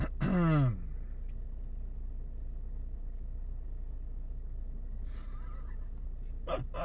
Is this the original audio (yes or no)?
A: yes